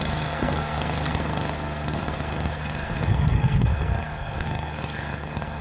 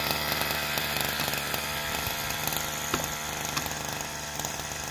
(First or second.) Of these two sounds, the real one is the second